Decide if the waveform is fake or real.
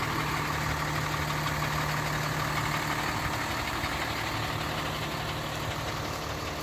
real